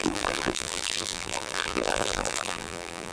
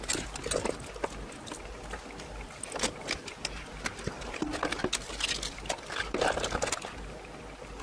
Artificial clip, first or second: first